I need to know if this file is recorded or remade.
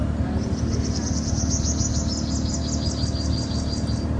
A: recorded